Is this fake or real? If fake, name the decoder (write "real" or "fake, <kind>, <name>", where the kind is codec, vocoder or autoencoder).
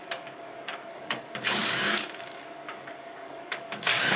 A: fake, codec, DAC